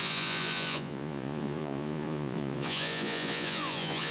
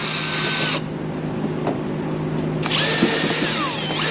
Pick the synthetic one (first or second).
first